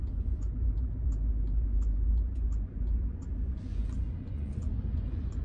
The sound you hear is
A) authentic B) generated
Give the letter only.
B